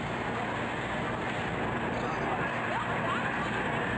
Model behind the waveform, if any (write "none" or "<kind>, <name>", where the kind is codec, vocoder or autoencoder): none